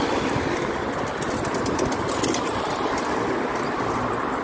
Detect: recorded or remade recorded